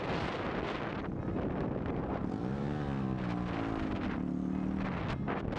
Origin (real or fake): real